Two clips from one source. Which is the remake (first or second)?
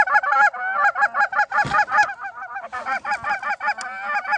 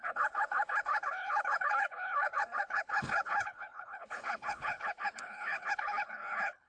second